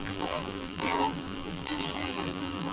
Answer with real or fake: fake